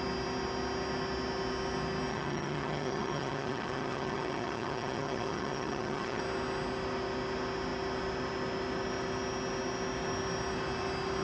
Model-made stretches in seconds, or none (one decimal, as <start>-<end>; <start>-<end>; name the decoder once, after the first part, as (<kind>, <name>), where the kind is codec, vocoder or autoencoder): 2.1-6.2 (vocoder, HiFi-GAN)